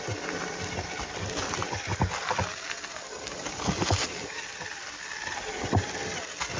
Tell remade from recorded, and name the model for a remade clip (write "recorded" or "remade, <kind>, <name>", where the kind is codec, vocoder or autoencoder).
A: recorded